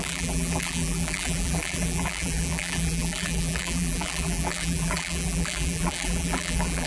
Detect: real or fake fake